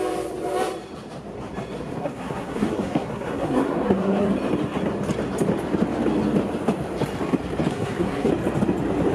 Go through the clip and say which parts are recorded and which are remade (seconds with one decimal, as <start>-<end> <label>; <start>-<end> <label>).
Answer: 0.0-1.9 recorded; 1.9-4.3 remade; 4.3-7.7 recorded; 7.7-8.3 remade; 8.3-9.1 recorded